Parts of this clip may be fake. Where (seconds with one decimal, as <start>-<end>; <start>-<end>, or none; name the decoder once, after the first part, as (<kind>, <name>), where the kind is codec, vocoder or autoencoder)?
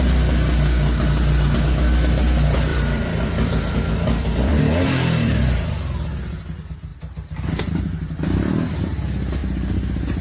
2.7-4.6 (vocoder, BigVGAN v2); 6.9-7.7